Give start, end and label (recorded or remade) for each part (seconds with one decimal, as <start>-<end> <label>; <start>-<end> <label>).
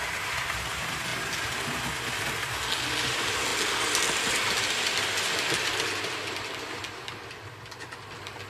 0.0-8.5 recorded